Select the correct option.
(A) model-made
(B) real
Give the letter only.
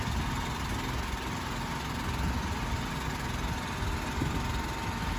B